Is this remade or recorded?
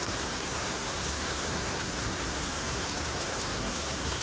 remade